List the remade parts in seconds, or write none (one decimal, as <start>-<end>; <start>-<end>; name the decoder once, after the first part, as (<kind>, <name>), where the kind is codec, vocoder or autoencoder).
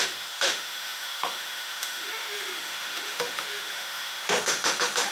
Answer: 0.0-5.1 (autoencoder, DAC-VAE)